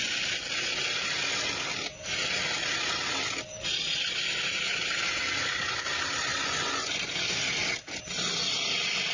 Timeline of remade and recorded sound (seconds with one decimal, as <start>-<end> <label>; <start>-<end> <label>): 0.0-6.3 recorded; 6.3-7.1 remade; 7.1-9.1 recorded